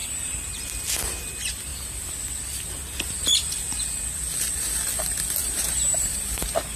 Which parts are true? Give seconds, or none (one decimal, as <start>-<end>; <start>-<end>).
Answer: 0.7-5.4